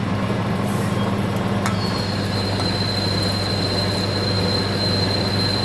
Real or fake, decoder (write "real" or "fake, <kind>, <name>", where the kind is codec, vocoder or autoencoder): real